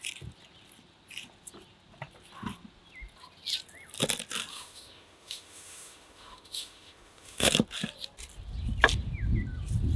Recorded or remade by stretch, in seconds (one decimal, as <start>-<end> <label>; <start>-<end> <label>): 0.0-4.5 recorded; 4.5-7.5 remade; 7.5-10.0 recorded